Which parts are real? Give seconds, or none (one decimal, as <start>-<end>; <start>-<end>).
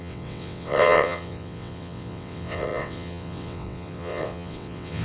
none